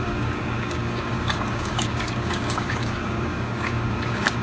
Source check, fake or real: fake